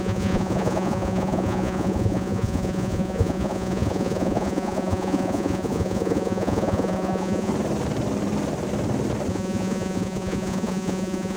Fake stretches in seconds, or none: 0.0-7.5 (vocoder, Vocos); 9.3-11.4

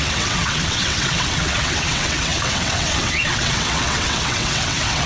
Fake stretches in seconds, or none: 0.0-5.1 (vocoder, WaveNeXt)

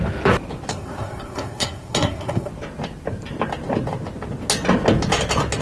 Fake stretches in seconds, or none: 0.7-2.5 (codec, SNAC)

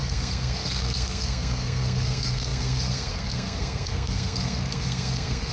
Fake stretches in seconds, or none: 0.0-5.5 (codec, SNAC)

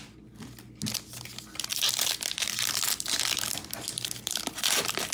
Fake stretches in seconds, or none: none

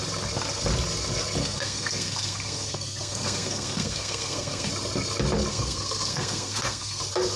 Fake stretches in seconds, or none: 1.4-4.7 (codec, SNAC); 5.5-7.0

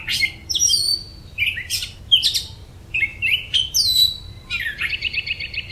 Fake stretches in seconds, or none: 0.9-2.0 (vocoder, BigVGAN v2); 3.1-3.7